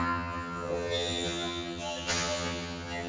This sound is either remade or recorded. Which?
remade